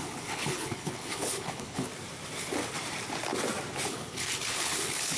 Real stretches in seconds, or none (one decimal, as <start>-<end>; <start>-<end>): 1.9-3.9